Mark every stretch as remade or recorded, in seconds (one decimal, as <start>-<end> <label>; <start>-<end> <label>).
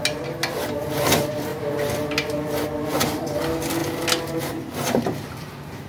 0.0-5.9 recorded